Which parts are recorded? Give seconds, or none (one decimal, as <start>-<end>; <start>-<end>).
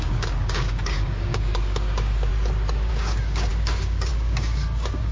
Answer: 2.3-2.9